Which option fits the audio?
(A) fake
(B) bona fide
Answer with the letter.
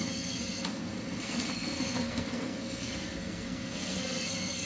A